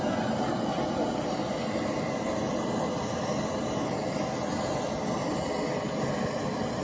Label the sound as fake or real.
real